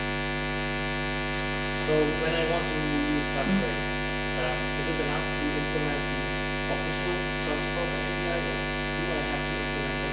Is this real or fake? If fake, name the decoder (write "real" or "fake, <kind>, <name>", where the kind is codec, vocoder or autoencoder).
real